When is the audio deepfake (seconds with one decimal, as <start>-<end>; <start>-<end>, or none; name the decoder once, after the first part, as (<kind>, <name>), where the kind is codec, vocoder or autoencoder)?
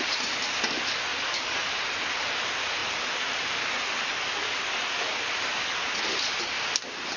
none